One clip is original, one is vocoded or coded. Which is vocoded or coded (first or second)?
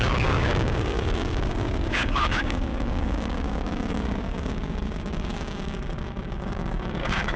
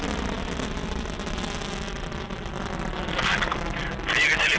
first